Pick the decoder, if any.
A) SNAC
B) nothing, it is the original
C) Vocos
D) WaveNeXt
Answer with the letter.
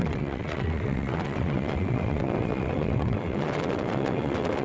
D